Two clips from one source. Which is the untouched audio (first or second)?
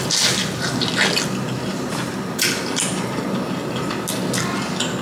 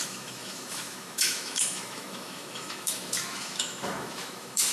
first